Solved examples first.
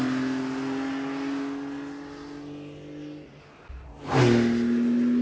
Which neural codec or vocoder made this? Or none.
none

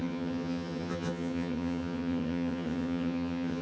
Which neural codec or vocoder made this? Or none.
vocoder, HiFi-GAN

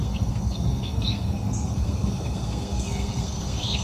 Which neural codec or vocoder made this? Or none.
codec, SNAC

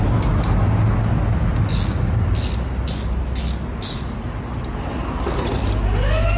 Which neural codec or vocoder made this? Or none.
none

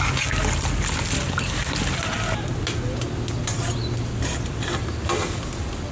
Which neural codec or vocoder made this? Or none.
none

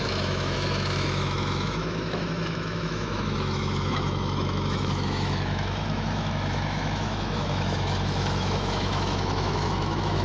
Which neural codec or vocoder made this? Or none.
autoencoder, DAC-VAE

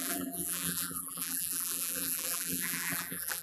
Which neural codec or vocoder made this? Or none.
vocoder, BigVGAN v2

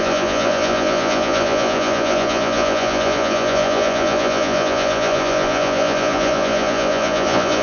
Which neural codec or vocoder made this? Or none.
vocoder, Vocos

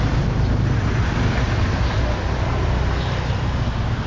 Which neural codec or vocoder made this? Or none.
none